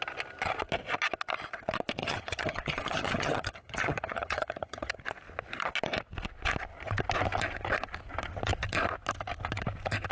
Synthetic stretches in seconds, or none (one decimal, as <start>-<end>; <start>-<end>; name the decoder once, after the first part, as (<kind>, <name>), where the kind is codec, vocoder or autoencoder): 2.0-5.0 (vocoder, HiFi-GAN)